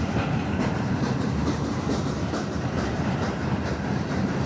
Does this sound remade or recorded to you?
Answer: remade